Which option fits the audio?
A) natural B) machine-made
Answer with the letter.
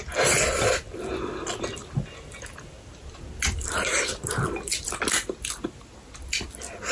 A